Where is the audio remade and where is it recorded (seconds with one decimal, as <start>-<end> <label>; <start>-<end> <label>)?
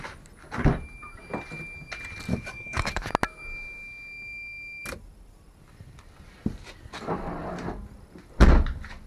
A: 0.0-2.3 recorded; 2.3-3.1 remade; 3.1-9.1 recorded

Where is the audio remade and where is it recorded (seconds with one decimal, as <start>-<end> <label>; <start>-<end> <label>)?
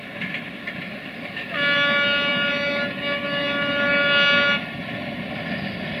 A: 0.0-6.0 recorded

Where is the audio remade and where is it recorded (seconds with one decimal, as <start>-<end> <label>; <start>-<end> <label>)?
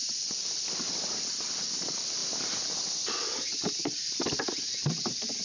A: 0.0-5.4 recorded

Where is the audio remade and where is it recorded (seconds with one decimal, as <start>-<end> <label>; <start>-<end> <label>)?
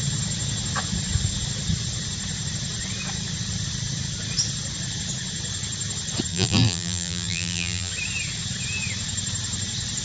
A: 0.0-6.3 recorded; 6.3-7.9 remade; 7.9-10.0 recorded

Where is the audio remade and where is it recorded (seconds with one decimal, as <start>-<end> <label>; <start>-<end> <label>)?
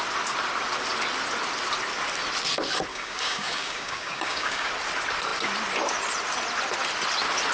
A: 0.0-2.9 recorded; 2.9-4.7 remade; 4.7-7.5 recorded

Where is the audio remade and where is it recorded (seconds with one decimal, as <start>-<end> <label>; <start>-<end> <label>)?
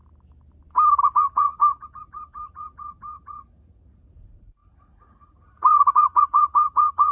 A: 0.0-1.0 recorded; 1.0-7.1 remade